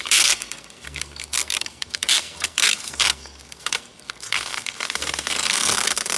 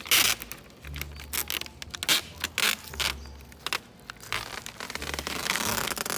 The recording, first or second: second